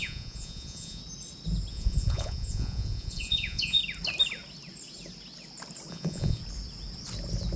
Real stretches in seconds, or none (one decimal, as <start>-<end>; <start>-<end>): 1.0-1.7; 3.8-5.9; 6.4-7.6